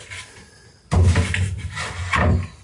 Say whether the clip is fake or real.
real